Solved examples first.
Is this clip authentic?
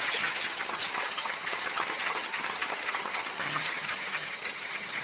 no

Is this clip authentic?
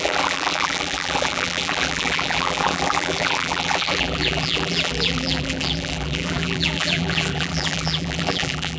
no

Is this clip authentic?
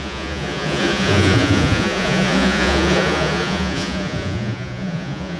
no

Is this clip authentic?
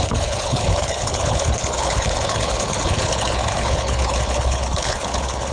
no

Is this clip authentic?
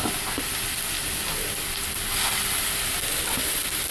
yes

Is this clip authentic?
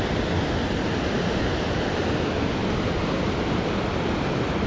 yes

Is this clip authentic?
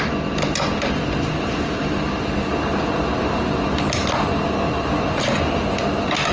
yes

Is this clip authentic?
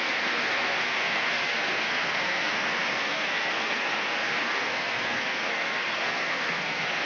no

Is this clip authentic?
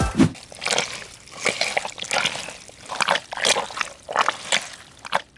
yes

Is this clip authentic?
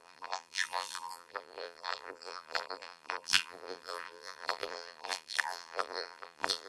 no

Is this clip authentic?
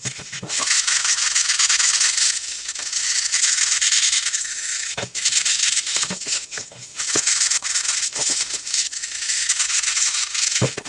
no